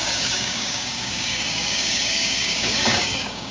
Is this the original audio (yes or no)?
no